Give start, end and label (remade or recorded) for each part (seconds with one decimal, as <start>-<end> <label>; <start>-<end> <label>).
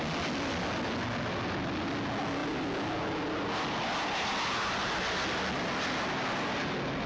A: 0.0-7.1 recorded